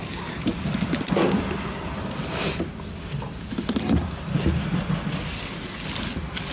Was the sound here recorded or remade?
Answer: recorded